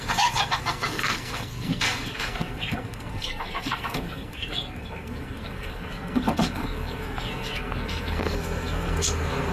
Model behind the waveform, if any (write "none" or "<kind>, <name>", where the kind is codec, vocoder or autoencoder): codec, SNAC